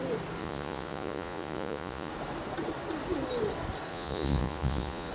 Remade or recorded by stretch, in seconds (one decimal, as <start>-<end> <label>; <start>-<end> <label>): 0.0-0.4 recorded; 0.4-2.1 remade; 2.1-3.9 recorded; 3.9-5.1 remade